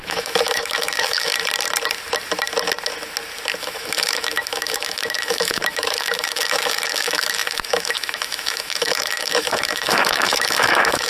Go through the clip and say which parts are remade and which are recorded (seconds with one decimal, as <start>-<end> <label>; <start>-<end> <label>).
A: 0.0-1.3 remade; 1.3-3.6 recorded; 3.6-11.1 remade